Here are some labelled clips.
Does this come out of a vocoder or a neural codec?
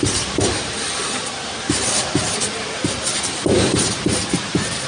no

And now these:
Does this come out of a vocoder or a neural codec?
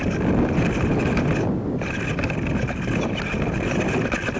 no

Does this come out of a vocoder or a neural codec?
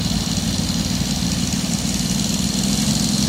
no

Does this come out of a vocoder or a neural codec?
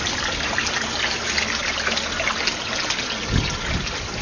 no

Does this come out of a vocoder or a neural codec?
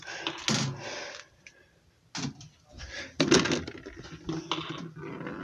no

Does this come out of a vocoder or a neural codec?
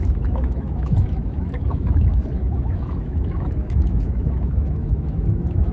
yes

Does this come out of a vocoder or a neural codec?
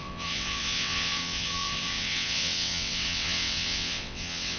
yes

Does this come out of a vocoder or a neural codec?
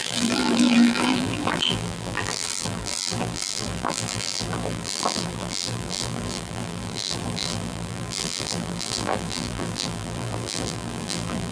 yes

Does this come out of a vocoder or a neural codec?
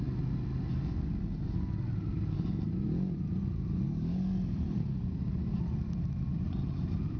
no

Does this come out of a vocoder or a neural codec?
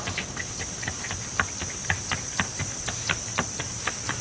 no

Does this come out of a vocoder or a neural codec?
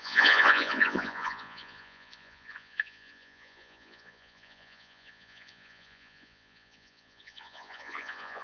yes